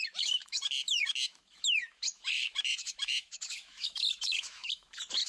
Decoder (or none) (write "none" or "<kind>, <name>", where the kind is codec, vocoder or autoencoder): autoencoder, DAC-VAE